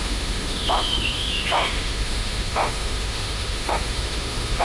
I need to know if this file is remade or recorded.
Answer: remade